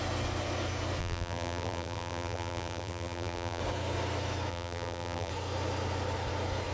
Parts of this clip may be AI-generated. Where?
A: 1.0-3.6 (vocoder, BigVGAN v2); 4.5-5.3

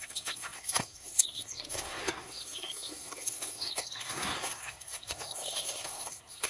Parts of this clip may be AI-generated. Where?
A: 0.0-6.5 (codec, SNAC)

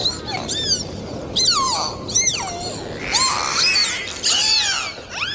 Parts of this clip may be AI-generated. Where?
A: none

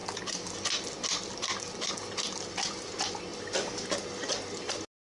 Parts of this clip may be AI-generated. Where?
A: none

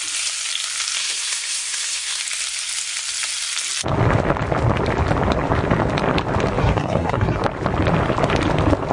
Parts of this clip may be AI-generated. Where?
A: 1.0-2.2 (codec, SNAC); 6.6-7.4